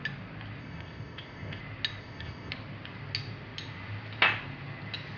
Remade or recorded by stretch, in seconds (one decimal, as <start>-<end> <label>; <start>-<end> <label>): 0.0-0.6 recorded; 0.6-1.6 remade; 1.6-2.0 recorded; 2.0-2.5 remade; 2.5-5.2 recorded